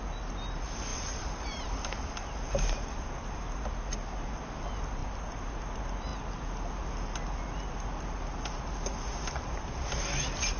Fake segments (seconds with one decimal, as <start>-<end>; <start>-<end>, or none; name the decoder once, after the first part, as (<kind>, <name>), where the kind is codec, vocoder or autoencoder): 0.9-3.9 (vocoder, BigVGAN v2); 5.0-5.5